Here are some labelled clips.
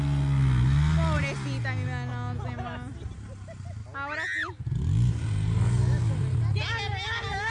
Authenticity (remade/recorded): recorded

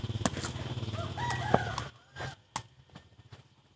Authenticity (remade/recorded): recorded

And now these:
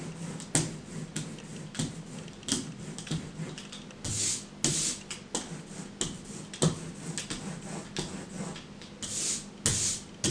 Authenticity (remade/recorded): recorded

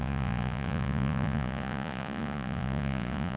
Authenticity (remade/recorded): remade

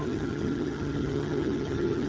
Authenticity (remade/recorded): remade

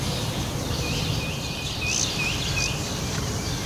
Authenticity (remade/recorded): recorded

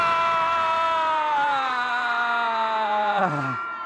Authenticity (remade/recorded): remade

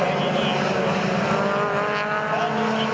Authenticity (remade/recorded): recorded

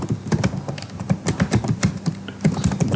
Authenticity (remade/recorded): recorded